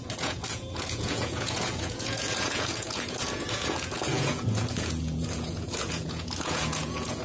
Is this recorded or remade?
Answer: remade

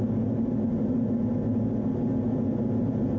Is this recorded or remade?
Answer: recorded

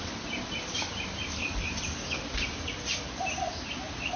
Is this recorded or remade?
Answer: remade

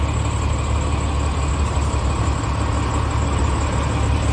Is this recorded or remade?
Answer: recorded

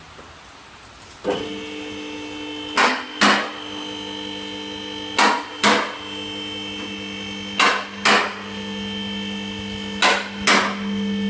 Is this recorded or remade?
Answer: recorded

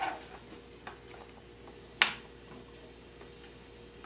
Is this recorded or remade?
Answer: recorded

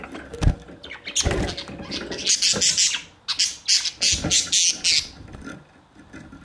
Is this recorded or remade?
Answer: recorded